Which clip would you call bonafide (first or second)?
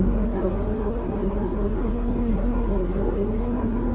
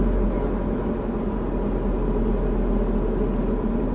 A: second